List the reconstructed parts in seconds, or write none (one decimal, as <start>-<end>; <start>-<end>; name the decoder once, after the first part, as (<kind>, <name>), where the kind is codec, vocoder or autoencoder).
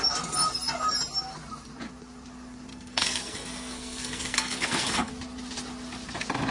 2.7-5.1 (codec, SNAC)